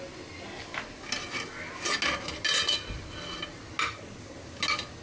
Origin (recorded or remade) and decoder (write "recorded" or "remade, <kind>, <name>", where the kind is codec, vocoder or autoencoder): recorded